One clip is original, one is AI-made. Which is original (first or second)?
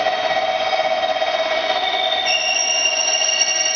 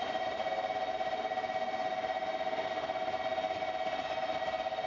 second